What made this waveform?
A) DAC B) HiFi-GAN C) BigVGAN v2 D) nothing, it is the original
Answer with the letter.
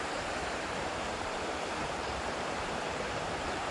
C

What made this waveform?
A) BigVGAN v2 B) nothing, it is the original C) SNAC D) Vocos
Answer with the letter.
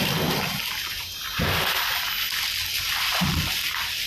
B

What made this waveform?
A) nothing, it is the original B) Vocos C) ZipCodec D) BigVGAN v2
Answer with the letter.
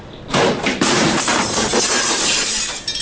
D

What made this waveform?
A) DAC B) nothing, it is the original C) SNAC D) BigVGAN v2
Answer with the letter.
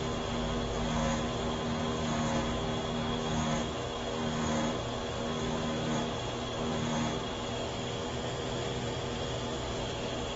B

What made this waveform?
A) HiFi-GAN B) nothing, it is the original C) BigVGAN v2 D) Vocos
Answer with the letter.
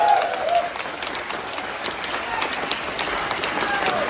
B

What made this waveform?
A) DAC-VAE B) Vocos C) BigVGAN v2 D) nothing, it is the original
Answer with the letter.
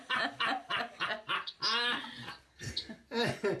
D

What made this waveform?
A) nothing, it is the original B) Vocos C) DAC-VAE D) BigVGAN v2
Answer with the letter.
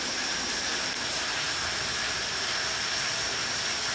A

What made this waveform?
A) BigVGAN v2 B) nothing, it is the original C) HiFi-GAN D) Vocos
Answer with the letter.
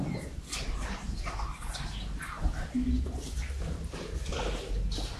B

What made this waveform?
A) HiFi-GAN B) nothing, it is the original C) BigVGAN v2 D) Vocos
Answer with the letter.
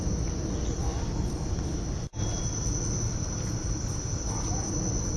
C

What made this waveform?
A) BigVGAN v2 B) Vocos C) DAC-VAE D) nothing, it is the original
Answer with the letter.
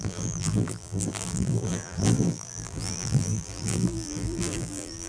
A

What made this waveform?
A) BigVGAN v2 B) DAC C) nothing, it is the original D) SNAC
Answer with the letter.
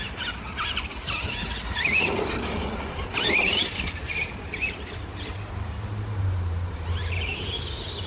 A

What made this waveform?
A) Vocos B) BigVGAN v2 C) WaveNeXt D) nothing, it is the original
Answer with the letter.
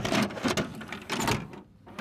D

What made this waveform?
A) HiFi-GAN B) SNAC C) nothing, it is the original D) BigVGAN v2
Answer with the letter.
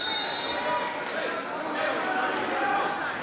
C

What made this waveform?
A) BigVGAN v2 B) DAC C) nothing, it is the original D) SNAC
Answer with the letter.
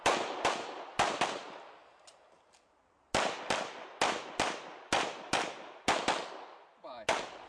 C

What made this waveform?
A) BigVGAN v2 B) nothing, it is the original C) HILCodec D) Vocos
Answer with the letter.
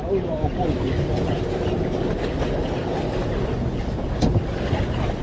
B